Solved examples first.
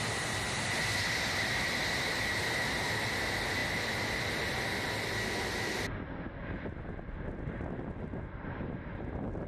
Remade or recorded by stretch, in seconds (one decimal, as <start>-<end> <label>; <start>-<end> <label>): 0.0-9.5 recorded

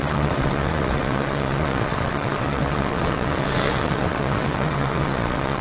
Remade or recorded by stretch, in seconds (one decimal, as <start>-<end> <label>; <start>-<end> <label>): 0.0-5.6 remade

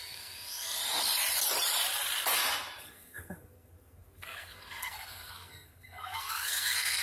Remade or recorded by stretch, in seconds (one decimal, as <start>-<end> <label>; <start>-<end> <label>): 0.0-0.8 remade; 0.8-2.8 recorded; 2.8-7.0 remade